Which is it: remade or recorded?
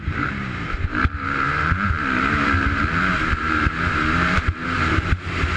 remade